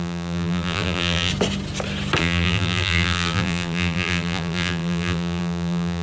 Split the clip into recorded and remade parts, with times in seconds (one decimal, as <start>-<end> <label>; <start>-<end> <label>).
0.0-1.3 remade; 1.3-2.2 recorded; 2.2-6.0 remade